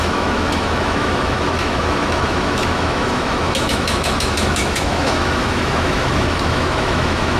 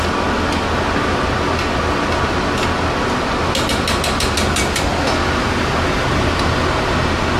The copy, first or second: first